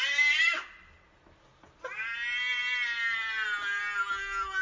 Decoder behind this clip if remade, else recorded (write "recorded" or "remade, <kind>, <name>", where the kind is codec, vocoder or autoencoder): recorded